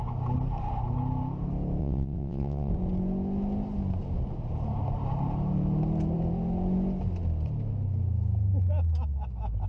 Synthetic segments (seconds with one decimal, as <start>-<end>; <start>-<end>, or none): 1.8-2.7